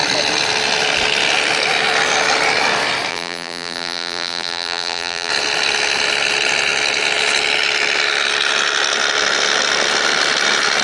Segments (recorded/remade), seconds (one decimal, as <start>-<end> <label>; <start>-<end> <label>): 0.0-3.1 recorded; 3.1-5.3 remade; 5.3-10.8 recorded